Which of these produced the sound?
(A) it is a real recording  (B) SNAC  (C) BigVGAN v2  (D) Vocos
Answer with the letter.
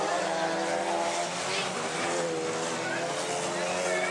A